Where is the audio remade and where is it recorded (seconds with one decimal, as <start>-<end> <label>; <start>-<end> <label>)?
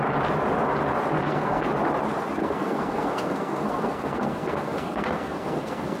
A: 0.0-1.2 recorded; 1.2-1.7 remade; 1.7-2.4 recorded; 2.4-6.0 remade